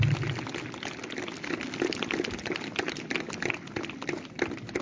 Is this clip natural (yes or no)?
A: yes